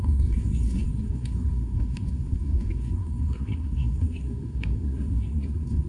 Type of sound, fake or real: fake